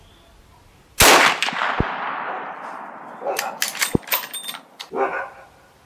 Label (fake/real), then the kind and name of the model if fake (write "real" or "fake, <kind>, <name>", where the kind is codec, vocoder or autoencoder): real